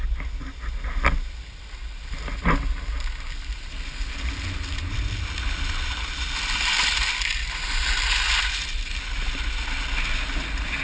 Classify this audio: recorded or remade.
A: recorded